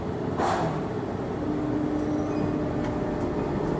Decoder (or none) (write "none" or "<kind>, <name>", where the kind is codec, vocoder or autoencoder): none